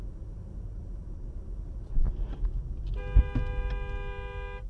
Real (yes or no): yes